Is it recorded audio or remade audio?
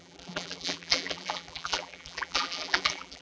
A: remade